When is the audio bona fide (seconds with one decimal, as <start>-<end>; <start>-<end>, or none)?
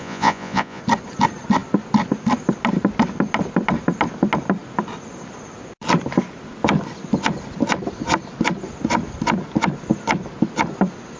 0.8-11.2